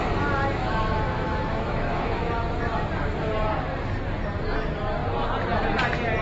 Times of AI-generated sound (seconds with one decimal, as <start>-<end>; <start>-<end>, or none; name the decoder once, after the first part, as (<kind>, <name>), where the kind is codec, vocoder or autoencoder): 0.6-2.3 (autoencoder, DAC-VAE)

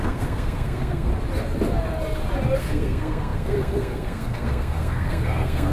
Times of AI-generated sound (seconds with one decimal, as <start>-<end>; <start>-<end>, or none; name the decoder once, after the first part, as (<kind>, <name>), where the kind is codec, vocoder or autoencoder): 0.0-1.1 (codec, SNAC); 2.6-5.7

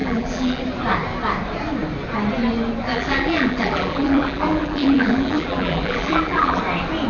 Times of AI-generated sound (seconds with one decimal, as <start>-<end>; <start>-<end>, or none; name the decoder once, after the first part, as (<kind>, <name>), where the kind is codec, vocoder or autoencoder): 0.0-0.6 (vocoder, BigVGAN v2); 2.9-6.6

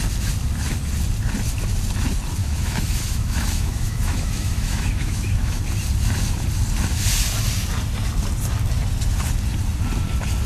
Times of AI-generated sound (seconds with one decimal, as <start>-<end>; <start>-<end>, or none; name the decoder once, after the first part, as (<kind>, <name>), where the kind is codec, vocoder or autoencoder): 2.4-5.6 (autoencoder, DAC-VAE)

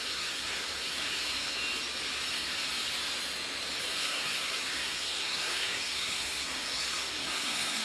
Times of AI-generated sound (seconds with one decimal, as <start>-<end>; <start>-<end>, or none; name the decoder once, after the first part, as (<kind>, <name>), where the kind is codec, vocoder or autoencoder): 0.0-1.6 (codec, SNAC); 2.3-2.7; 3.8-7.8